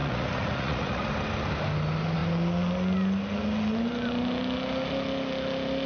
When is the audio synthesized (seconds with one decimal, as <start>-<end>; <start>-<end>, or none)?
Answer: 0.0-1.1